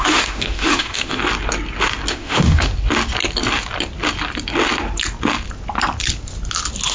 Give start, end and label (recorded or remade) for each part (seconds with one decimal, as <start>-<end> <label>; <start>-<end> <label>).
0.0-1.2 remade; 1.2-2.1 recorded; 2.1-2.7 remade; 2.7-6.9 recorded

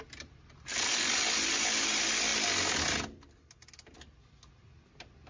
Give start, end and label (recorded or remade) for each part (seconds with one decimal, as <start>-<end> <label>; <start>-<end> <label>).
0.0-5.3 recorded

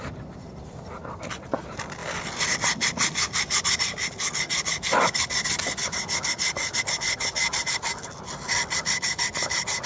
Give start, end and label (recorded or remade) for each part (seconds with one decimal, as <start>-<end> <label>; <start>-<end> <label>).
0.0-9.9 recorded

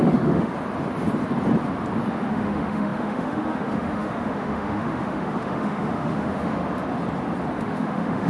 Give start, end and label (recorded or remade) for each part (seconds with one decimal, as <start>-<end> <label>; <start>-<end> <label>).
0.0-0.5 remade; 0.5-2.3 recorded; 2.3-6.6 remade; 6.6-7.6 recorded; 7.6-8.3 remade

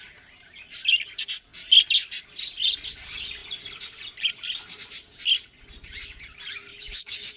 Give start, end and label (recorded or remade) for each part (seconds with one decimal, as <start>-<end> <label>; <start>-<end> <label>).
0.0-6.7 recorded; 6.7-7.4 remade

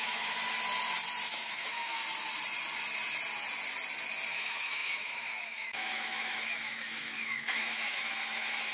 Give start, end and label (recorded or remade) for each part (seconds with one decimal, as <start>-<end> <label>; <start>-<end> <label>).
0.0-0.4 remade; 0.4-1.3 recorded; 1.3-2.0 remade; 2.0-4.3 recorded; 4.3-8.7 remade

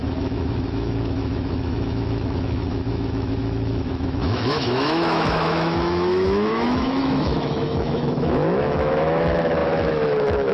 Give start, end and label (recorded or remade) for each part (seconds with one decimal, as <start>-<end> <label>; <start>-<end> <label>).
0.0-10.5 remade

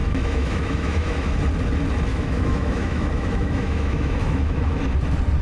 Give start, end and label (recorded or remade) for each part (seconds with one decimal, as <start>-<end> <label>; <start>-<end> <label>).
0.0-1.4 remade; 1.4-2.1 recorded; 2.1-4.8 remade; 4.8-5.4 recorded